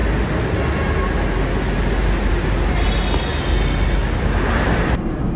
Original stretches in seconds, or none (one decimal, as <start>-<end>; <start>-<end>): 0.0-5.4